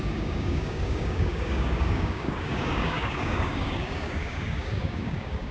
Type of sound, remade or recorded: remade